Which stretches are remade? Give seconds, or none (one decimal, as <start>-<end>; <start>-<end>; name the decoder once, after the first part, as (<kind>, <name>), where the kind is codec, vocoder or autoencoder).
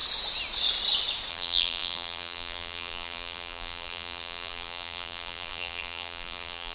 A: 1.3-6.7 (vocoder, BigVGAN v2)